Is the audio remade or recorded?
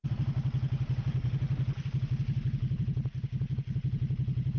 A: recorded